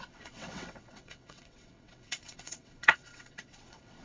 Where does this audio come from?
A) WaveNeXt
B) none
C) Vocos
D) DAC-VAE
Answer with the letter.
A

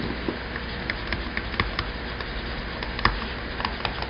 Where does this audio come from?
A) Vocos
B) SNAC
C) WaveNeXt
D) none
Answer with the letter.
D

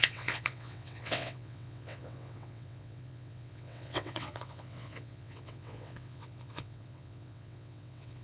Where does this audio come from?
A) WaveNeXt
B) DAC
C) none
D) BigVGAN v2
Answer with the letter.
A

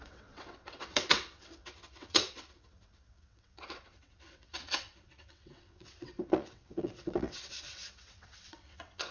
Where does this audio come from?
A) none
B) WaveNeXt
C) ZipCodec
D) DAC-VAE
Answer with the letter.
B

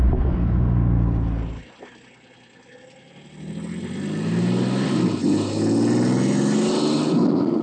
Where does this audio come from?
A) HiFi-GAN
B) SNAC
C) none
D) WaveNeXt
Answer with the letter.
C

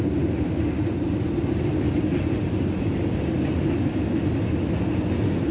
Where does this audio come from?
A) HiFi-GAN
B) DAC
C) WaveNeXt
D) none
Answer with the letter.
D